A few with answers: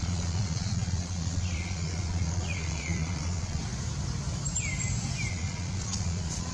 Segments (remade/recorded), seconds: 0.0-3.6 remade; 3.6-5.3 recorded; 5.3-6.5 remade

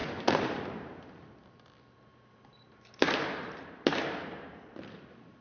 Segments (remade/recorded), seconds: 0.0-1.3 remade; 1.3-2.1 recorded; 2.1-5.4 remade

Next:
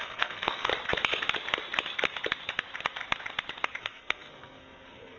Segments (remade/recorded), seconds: 0.0-0.7 remade; 0.7-3.8 recorded; 3.8-5.2 remade

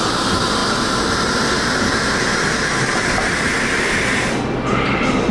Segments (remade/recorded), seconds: 0.0-5.3 recorded

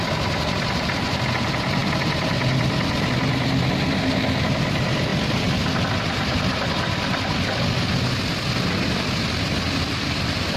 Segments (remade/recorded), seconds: 0.0-10.6 recorded

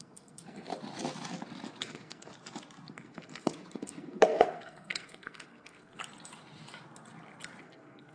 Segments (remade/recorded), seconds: 0.0-0.7 remade; 0.7-1.8 recorded; 1.8-2.3 remade; 2.3-2.9 recorded; 2.9-6.0 remade; 6.0-7.6 recorded; 7.6-8.1 remade

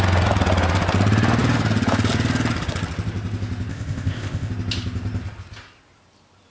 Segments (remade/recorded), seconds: 0.0-3.7 recorded; 3.7-4.5 remade; 4.5-6.5 recorded

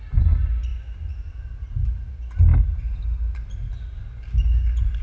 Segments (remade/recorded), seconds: 0.0-5.0 recorded